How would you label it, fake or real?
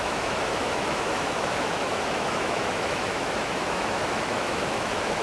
fake